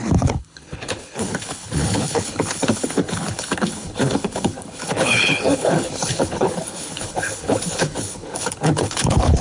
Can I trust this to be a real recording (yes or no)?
no